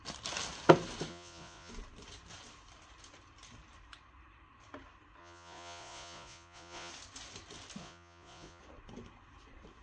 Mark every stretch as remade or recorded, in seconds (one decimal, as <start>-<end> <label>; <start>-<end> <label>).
0.0-1.1 recorded; 1.1-1.7 remade; 1.7-5.2 recorded; 5.2-6.9 remade; 6.9-7.8 recorded; 7.8-8.6 remade; 8.6-9.8 recorded